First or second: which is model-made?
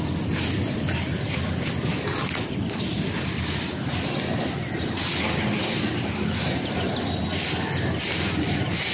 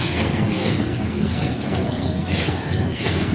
second